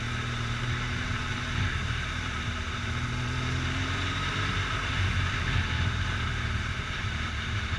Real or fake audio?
fake